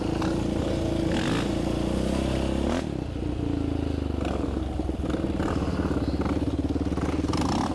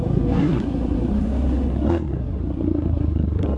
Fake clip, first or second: second